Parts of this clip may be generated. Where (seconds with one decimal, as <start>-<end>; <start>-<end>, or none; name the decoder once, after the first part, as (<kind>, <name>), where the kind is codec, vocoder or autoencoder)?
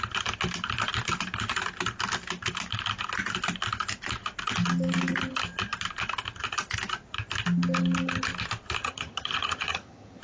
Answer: 8.8-10.2 (vocoder, HiFi-GAN)